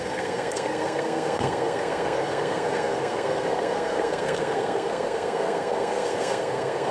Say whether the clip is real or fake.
fake